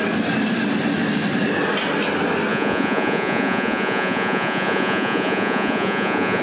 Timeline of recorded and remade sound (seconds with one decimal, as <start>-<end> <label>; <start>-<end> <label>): 0.0-2.5 recorded; 2.5-6.4 remade